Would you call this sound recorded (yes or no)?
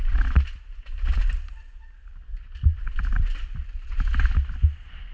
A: yes